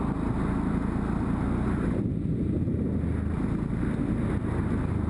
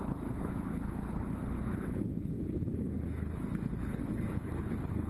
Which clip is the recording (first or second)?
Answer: first